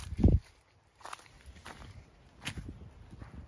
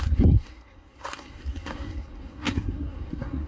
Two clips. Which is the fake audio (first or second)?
second